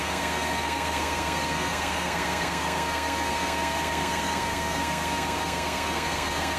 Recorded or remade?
remade